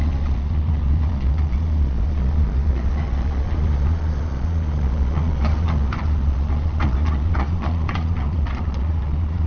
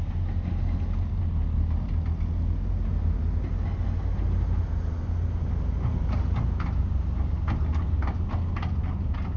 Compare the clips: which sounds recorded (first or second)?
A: second